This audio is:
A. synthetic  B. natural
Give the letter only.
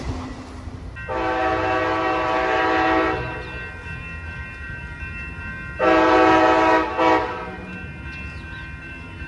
B